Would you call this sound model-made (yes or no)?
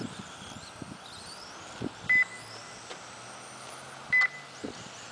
no